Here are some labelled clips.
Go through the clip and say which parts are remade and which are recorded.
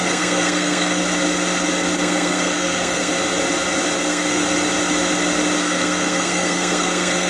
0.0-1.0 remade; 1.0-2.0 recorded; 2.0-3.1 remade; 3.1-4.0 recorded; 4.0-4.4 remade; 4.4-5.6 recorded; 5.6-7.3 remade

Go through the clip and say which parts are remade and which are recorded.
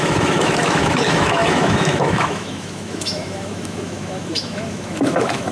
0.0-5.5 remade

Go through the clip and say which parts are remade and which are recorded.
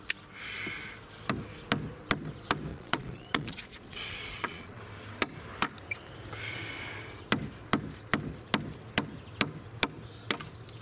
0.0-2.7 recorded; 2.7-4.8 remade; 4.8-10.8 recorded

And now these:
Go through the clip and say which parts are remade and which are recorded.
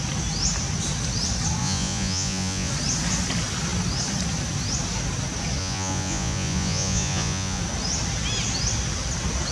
0.0-1.6 recorded; 1.6-2.7 remade; 2.7-5.6 recorded; 5.6-7.6 remade; 7.6-9.5 recorded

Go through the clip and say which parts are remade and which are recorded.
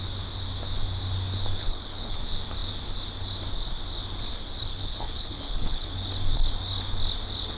0.0-1.6 recorded; 1.6-2.2 remade; 2.2-4.6 recorded; 4.6-5.9 remade; 5.9-7.6 recorded